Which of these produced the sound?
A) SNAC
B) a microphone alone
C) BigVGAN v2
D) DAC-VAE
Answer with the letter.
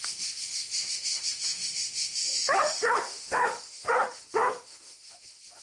D